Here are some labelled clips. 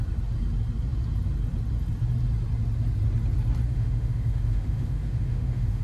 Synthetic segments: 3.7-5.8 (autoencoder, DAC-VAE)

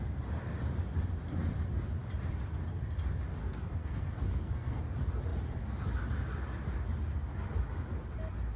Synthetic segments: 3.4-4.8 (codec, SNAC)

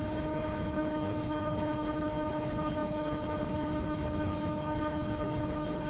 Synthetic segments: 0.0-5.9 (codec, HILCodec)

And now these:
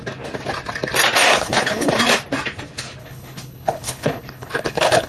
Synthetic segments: 1.3-1.9 (codec, HILCodec); 3.0-5.1

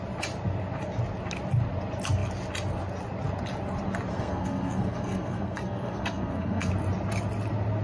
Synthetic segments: 4.1-6.7 (codec, SNAC)

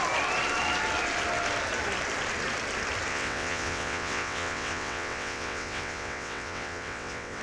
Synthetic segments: 3.1-7.4 (vocoder, WaveNeXt)

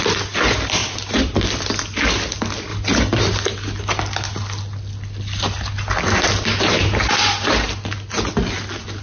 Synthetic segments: 0.8-2.0 (vocoder, BigVGAN v2)